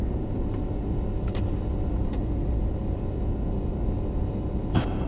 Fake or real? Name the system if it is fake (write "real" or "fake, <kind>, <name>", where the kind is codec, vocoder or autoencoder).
fake, vocoder, BigVGAN v2